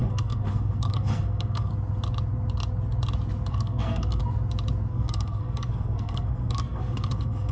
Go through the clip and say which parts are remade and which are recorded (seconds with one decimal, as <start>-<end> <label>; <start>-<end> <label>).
0.0-1.7 remade; 1.7-3.5 recorded; 3.5-4.2 remade; 4.2-4.9 recorded; 4.9-7.5 remade